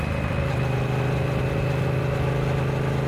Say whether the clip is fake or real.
real